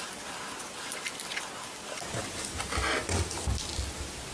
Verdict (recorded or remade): recorded